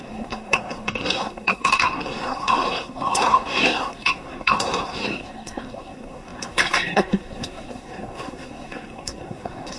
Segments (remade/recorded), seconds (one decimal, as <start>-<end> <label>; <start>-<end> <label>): 0.0-9.8 remade